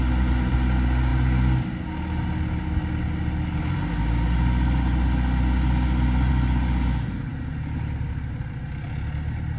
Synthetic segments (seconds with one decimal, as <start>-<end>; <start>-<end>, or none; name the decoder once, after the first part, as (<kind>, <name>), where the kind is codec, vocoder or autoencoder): none